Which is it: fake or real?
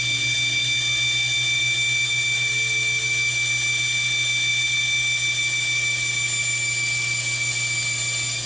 real